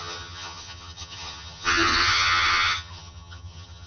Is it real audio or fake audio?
fake